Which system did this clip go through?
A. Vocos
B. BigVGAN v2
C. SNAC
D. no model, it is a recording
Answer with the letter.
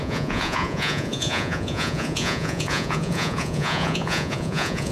A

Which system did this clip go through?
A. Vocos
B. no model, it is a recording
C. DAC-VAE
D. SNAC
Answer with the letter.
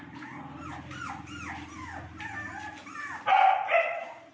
B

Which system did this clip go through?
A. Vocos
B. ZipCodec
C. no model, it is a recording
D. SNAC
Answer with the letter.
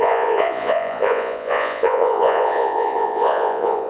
A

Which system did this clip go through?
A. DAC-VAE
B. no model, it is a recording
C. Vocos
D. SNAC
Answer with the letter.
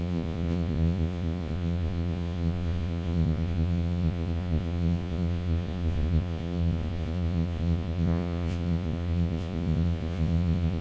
C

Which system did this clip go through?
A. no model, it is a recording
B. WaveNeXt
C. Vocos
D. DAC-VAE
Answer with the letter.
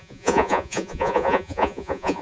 C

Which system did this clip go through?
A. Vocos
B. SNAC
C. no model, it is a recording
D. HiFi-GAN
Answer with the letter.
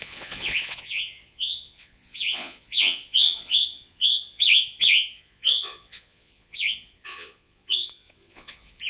A